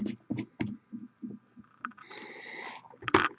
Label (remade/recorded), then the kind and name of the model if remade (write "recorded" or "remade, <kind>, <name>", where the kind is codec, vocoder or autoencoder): recorded